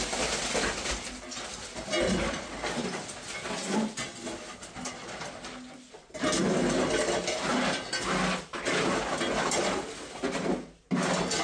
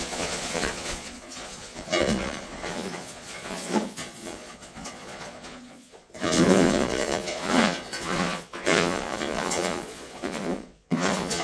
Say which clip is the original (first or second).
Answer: first